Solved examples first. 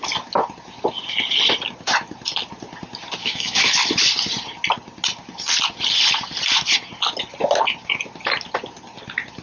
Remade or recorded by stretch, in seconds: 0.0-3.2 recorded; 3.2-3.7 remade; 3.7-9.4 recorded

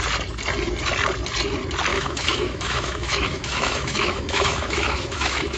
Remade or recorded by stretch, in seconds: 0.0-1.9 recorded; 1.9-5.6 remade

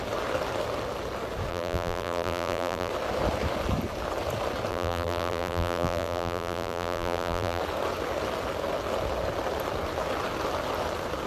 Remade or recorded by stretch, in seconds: 0.0-1.5 recorded; 1.5-2.9 remade; 2.9-4.7 recorded; 4.7-7.6 remade; 7.6-11.3 recorded

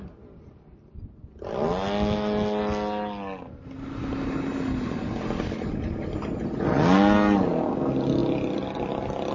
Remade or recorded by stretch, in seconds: 0.0-9.3 recorded